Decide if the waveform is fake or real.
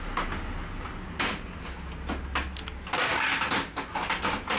real